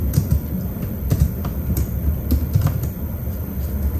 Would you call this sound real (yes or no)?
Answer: yes